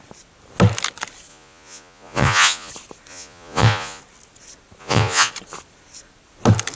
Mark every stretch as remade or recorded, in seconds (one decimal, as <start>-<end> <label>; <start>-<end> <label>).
0.0-1.3 recorded; 1.3-2.7 remade; 2.7-3.1 recorded; 3.1-4.0 remade; 4.0-4.8 recorded; 4.8-5.3 remade; 5.3-6.7 recorded